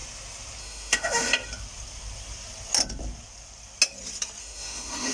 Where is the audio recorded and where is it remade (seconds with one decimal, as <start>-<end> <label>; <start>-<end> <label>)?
0.0-0.6 recorded; 0.6-1.3 remade; 1.3-4.4 recorded; 4.4-5.1 remade